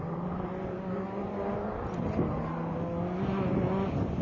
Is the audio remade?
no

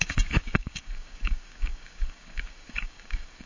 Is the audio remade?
yes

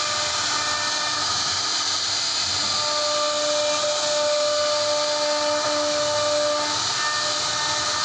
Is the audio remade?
no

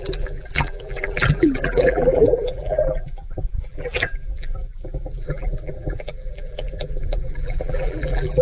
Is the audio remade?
yes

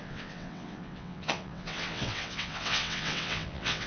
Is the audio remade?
yes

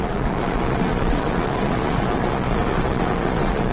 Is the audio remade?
yes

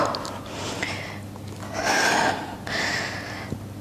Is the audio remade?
no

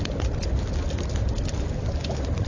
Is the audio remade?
no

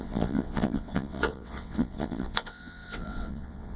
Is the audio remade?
yes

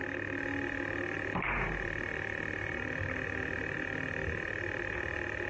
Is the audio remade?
no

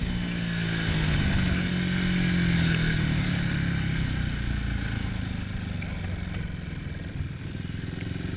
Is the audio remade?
no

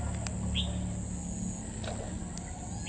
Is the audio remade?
no